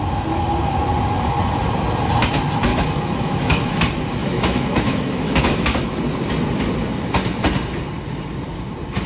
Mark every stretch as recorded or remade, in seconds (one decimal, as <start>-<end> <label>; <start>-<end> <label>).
0.0-2.7 recorded; 2.7-3.8 remade; 3.8-4.2 recorded; 4.2-5.9 remade; 5.9-9.1 recorded